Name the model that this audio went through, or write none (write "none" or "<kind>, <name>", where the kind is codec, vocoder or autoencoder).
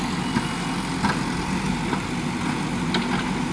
none